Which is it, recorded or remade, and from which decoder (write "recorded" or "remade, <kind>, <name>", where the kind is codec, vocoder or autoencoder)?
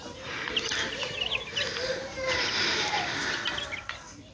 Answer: recorded